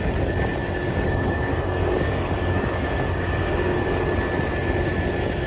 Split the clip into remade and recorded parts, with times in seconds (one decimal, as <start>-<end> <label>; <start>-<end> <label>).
0.0-0.6 recorded; 0.6-3.9 remade; 3.9-5.5 recorded